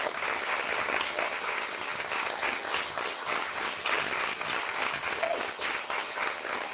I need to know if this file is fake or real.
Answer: fake